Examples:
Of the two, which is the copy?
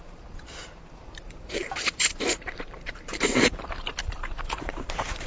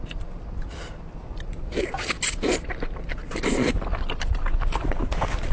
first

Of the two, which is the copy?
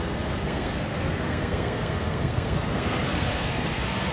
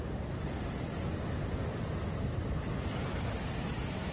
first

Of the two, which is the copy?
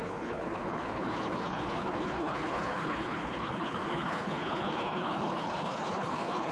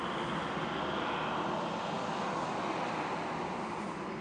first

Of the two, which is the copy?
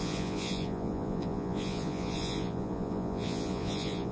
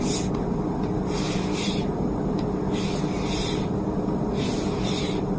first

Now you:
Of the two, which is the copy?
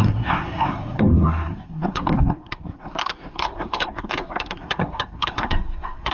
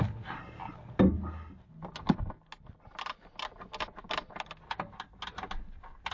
first